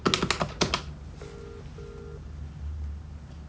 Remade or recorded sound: recorded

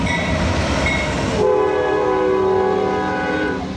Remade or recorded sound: recorded